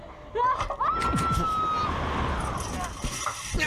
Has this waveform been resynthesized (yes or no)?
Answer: no